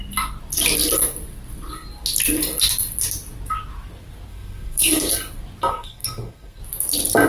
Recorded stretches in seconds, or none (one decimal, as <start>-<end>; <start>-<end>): 0.0-4.3; 5.1-5.7; 6.6-7.3